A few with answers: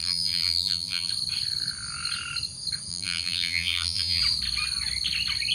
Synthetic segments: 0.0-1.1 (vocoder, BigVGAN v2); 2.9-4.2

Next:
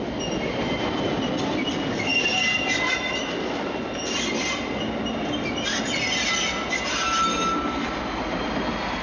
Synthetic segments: none

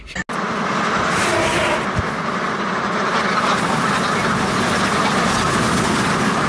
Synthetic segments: none

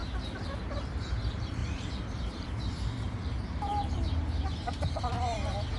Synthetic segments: 1.6-5.1 (vocoder, BigVGAN v2)

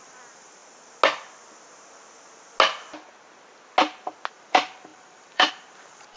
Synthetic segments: 0.0-0.6 (vocoder, BigVGAN v2); 4.3-6.2

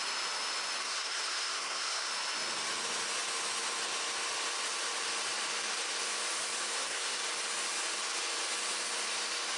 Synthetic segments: 0.8-2.1 (codec, SNAC); 6.7-7.2